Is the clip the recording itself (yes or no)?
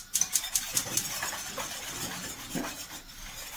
yes